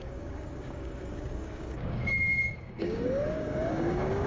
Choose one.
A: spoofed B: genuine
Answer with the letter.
A